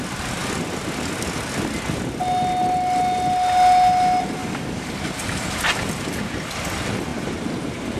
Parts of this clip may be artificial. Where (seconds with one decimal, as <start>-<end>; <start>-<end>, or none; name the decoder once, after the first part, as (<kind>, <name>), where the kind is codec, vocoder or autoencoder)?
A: 4.4-4.9 (codec, DAC)